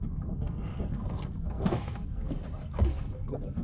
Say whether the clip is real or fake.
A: fake